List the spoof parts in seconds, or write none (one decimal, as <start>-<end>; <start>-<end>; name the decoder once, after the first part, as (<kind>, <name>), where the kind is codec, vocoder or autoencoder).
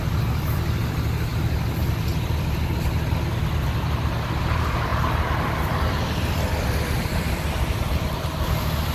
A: none